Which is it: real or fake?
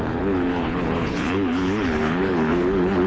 fake